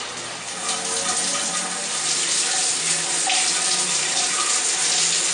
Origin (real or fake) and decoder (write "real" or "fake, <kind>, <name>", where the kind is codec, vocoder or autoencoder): real